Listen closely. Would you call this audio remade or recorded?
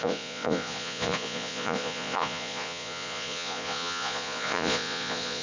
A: remade